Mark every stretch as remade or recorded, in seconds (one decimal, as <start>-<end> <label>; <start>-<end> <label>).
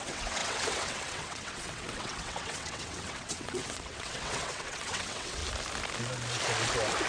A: 0.0-5.4 remade; 5.4-7.1 recorded